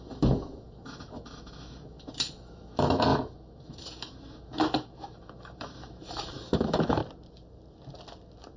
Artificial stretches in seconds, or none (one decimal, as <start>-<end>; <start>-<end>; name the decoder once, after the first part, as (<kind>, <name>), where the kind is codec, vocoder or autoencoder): 0.0-7.0 (autoencoder, DAC-VAE)